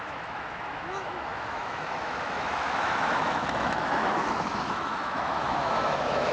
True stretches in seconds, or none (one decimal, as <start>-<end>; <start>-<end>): none